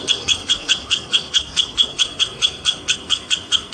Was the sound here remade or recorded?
remade